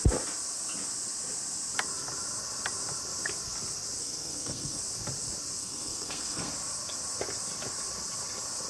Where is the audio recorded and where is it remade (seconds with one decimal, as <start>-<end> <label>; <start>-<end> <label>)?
0.0-4.0 recorded; 4.0-4.8 remade; 4.8-5.6 recorded; 5.6-6.5 remade; 6.5-8.7 recorded

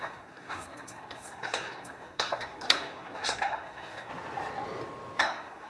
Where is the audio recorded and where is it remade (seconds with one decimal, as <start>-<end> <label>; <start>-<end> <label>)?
0.0-4.1 remade; 4.1-5.2 recorded; 5.2-5.7 remade

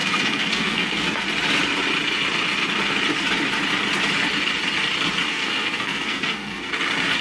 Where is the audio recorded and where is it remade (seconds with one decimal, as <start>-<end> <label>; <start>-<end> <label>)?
0.0-1.2 remade; 1.2-5.3 recorded; 5.3-6.7 remade; 6.7-7.2 recorded

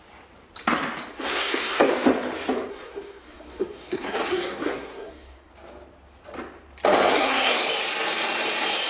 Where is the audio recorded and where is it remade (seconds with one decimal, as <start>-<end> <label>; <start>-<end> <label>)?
0.0-1.1 recorded; 1.1-1.9 remade; 1.9-2.7 recorded; 2.7-5.5 remade; 5.5-7.1 recorded; 7.1-7.6 remade; 7.6-8.9 recorded

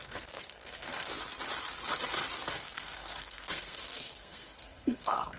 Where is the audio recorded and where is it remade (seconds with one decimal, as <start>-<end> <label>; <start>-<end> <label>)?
0.0-1.1 remade; 1.1-2.5 recorded; 2.5-5.4 remade

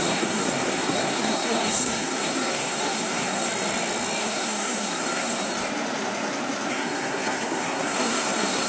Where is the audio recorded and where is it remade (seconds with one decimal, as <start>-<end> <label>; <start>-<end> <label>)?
0.0-3.5 remade; 3.5-4.2 recorded; 4.2-5.5 remade; 5.5-6.7 recorded; 6.7-8.7 remade

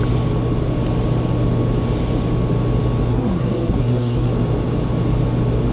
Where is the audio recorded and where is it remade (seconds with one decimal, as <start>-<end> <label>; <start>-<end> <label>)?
0.0-3.1 recorded; 3.1-4.3 remade; 4.3-5.7 recorded

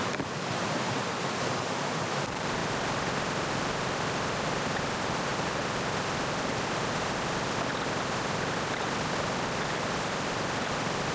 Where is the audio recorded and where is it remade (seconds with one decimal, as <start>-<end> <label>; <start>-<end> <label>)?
0.0-11.1 recorded